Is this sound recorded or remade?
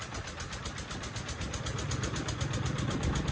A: remade